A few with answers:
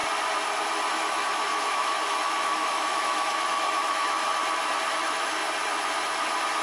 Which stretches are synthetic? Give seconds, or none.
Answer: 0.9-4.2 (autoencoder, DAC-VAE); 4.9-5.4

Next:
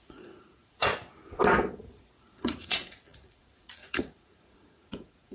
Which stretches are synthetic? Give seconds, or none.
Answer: 0.0-0.9 (vocoder, Vocos); 1.7-5.3

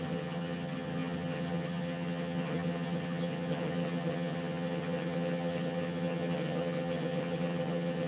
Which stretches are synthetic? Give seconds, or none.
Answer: 0.0-8.1 (vocoder, HiFi-GAN)

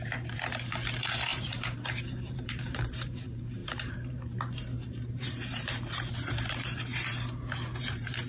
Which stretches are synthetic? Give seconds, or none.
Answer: 0.0-7.1 (vocoder, BigVGAN v2); 7.8-8.3

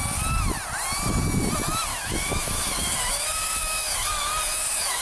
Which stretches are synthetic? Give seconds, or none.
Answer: 1.9-5.0 (autoencoder, DAC-VAE)

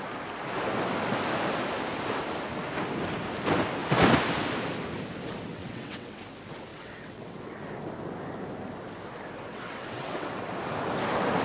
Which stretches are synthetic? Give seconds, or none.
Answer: 5.5-6.2 (vocoder, WaveNeXt); 6.7-7.6; 9.5-10.4

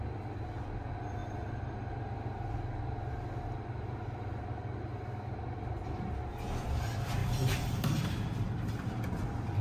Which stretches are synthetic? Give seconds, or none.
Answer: 7.2-8.9 (vocoder, BigVGAN v2)